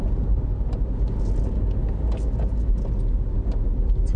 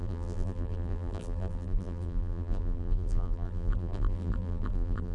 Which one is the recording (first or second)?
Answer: first